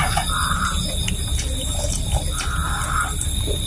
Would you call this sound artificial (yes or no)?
no